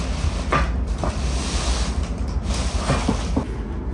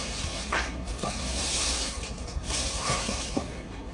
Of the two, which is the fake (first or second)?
second